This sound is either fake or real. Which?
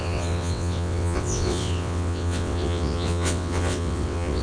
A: fake